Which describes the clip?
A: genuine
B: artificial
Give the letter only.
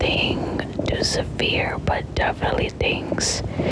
A